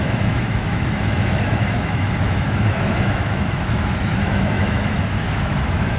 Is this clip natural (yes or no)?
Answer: no